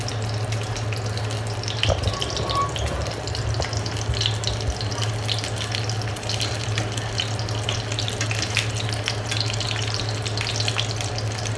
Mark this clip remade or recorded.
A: recorded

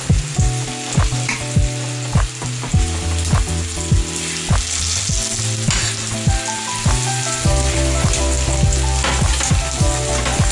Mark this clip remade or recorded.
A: recorded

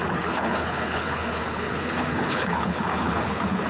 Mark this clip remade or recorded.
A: remade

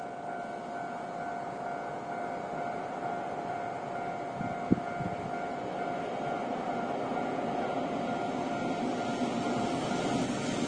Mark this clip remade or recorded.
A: recorded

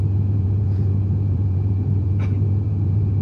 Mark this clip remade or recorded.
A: remade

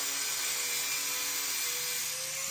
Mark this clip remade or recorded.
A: recorded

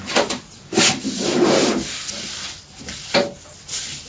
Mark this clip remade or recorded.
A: recorded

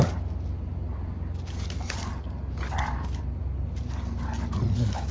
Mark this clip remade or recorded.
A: recorded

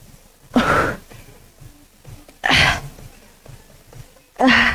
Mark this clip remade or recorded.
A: recorded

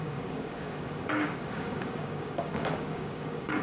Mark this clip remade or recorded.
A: remade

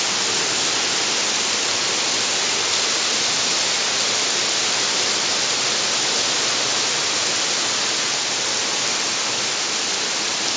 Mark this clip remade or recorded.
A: recorded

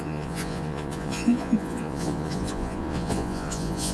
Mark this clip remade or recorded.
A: remade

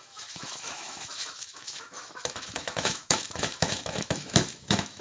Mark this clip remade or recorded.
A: remade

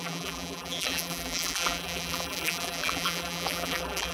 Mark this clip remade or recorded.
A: remade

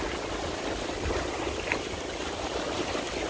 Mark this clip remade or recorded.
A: recorded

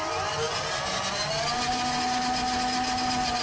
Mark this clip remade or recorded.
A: recorded